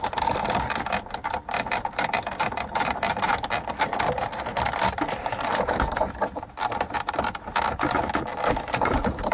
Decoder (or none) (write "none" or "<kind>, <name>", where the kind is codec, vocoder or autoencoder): none